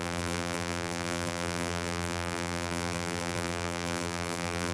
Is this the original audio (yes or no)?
no